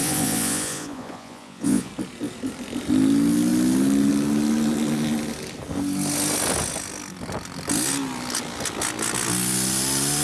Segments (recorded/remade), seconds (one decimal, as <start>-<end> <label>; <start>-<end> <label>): 0.0-1.9 remade; 1.9-10.2 recorded